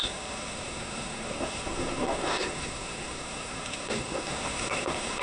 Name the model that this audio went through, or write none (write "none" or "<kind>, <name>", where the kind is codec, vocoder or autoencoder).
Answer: codec, SNAC